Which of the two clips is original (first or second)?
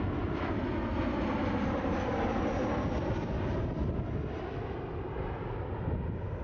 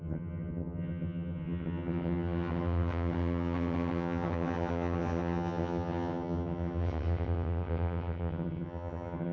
first